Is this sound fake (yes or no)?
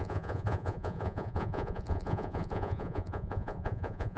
yes